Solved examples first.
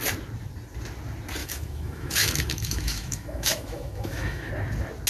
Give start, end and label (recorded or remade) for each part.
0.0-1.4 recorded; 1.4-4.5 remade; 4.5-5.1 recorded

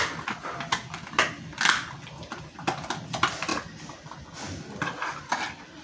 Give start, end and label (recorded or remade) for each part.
0.0-5.8 recorded

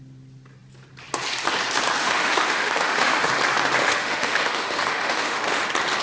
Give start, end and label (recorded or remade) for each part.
0.0-2.0 recorded; 2.0-3.3 remade; 3.3-3.8 recorded; 3.8-5.6 remade; 5.6-6.0 recorded

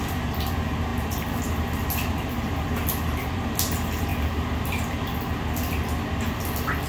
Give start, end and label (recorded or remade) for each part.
0.0-6.9 recorded

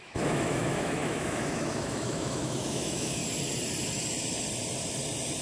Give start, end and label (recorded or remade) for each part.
0.0-3.2 remade; 3.2-5.4 recorded

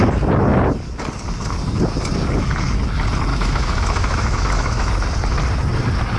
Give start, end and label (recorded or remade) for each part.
0.0-3.3 recorded; 3.3-4.9 remade; 4.9-6.2 recorded

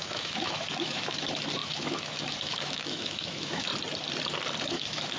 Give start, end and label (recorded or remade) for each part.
0.0-3.7 remade; 3.7-4.6 recorded; 4.6-5.2 remade

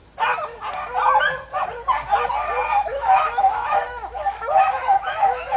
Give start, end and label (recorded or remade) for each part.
0.0-2.9 recorded; 2.9-5.6 remade